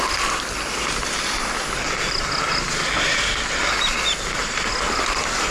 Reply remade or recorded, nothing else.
recorded